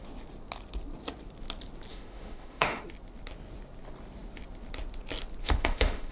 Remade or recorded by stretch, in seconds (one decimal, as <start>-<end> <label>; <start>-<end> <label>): 0.0-1.9 recorded; 1.9-2.8 remade; 2.8-5.4 recorded; 5.4-6.1 remade